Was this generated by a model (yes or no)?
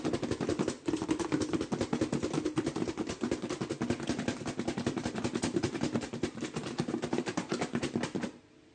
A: no